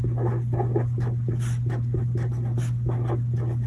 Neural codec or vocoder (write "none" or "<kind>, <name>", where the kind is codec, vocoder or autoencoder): none